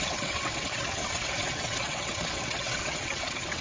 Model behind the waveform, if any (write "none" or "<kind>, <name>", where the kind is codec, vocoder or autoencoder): vocoder, WaveNeXt